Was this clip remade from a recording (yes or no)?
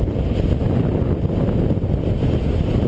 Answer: no